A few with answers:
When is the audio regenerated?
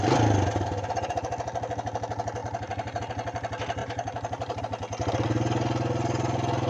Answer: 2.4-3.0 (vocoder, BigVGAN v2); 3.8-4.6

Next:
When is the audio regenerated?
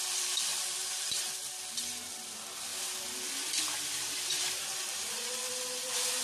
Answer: 0.0-2.7 (vocoder, BigVGAN v2); 3.6-4.3; 5.5-6.2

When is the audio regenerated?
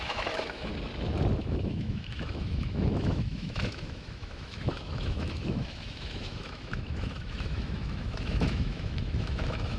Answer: 0.0-0.7 (autoencoder, DAC-VAE); 1.4-9.8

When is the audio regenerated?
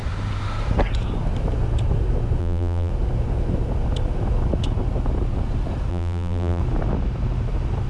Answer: 2.4-2.9 (vocoder, BigVGAN v2); 5.9-6.6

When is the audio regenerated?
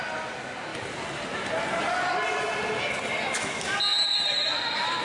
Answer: 0.7-1.8 (vocoder, BigVGAN v2); 3.9-4.4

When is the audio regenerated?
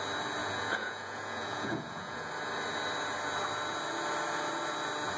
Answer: 0.4-2.3 (vocoder, Vocos)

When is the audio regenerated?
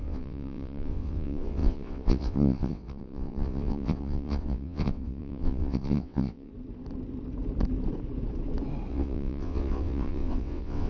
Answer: 0.0-6.5 (vocoder, WaveNeXt); 8.9-10.9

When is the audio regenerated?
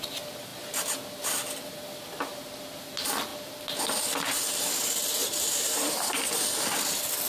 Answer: 5.2-6.1 (vocoder, BigVGAN v2)